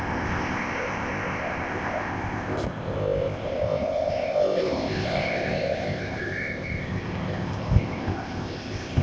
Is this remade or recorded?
remade